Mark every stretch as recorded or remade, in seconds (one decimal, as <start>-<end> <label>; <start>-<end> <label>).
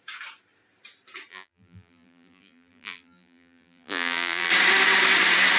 0.0-1.3 recorded; 1.3-4.5 remade; 4.5-5.6 recorded